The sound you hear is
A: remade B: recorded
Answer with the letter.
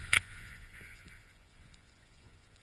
A